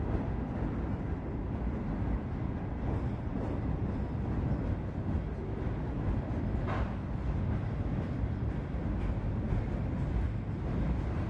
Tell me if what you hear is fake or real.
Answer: real